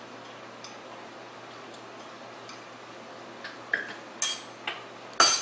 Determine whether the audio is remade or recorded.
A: recorded